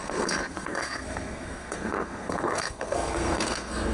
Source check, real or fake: fake